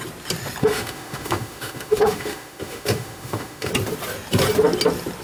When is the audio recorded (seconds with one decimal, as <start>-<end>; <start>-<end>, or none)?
0.0-0.6; 3.7-5.2